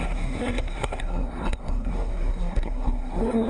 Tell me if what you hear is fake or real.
fake